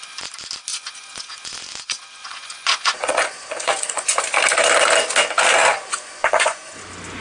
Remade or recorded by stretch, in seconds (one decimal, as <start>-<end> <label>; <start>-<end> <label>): 0.0-0.7 recorded; 0.7-4.2 remade; 4.2-5.6 recorded; 5.6-6.8 remade; 6.8-7.2 recorded